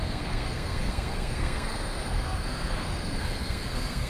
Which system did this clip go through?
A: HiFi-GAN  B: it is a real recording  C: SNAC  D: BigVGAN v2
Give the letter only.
C